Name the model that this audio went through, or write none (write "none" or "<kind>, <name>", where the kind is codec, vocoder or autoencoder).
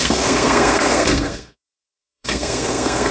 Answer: codec, SNAC